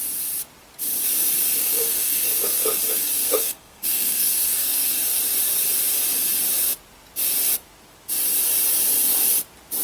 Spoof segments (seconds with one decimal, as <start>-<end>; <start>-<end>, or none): 1.6-5.2